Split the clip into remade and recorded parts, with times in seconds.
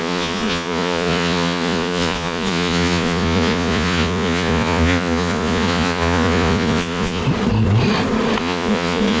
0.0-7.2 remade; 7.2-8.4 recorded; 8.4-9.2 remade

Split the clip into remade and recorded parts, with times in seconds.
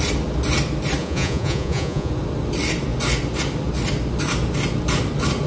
0.0-1.0 recorded; 1.0-2.1 remade; 2.1-5.5 recorded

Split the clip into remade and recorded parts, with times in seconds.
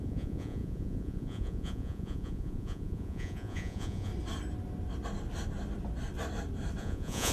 0.0-4.1 remade; 4.1-6.8 recorded; 6.8-7.3 remade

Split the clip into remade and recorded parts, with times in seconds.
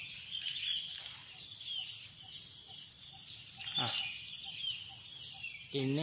0.0-6.0 recorded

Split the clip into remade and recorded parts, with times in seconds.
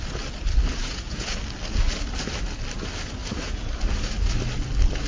0.0-0.8 recorded; 0.8-1.4 remade; 1.4-3.2 recorded; 3.2-3.7 remade; 3.7-5.1 recorded